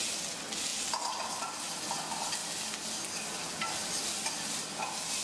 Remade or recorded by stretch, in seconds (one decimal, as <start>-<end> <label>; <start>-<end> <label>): 0.0-5.2 recorded